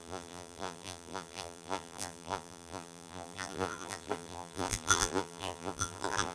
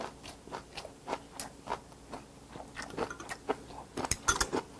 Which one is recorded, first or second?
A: second